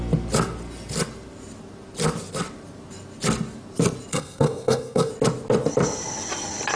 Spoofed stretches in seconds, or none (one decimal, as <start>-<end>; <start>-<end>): 4.1-5.1